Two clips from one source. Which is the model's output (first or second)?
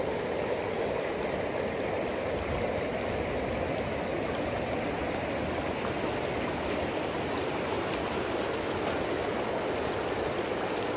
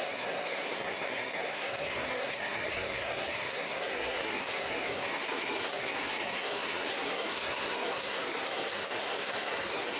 second